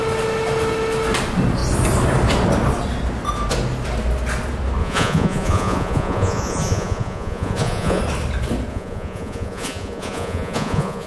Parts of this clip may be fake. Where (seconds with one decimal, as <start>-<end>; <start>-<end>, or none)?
4.8-8.0; 8.7-11.1